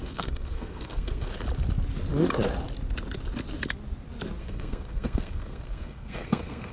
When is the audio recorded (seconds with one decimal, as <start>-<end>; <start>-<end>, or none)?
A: 1.3-4.4